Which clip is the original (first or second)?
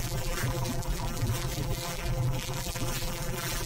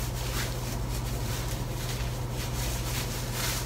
second